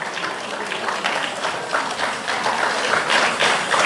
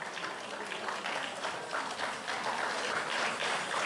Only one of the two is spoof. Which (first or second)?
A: first